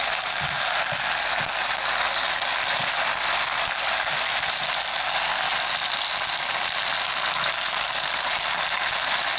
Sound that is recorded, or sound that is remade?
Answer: recorded